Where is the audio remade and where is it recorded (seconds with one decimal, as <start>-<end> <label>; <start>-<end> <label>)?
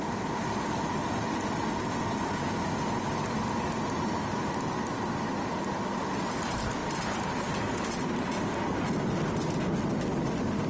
0.0-10.7 recorded